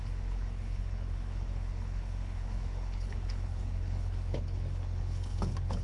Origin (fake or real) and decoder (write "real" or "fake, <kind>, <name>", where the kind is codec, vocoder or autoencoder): fake, codec, HILCodec